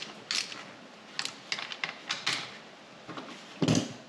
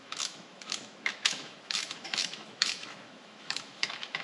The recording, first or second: first